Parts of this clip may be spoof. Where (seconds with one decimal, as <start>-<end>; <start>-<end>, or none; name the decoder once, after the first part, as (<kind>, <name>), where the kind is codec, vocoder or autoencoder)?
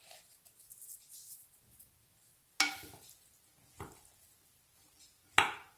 none